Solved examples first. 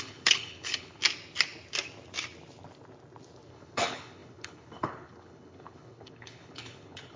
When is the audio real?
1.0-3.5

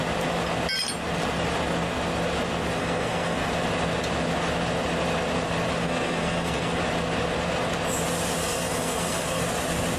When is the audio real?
0.0-2.8; 3.5-5.8; 6.8-8.4; 9.4-10.0

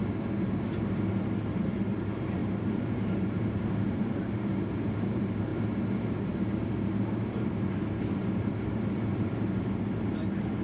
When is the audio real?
none

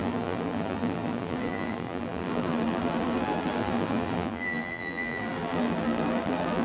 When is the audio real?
none

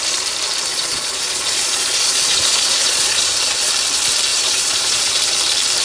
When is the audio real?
0.0-0.7; 3.7-4.3; 5.2-5.8

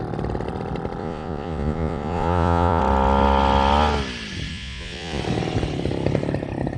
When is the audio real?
0.0-1.0; 2.8-4.5; 5.2-6.8

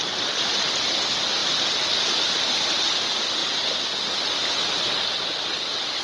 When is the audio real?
0.0-6.0

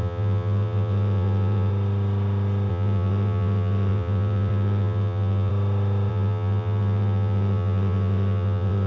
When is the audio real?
1.7-2.7; 5.5-6.1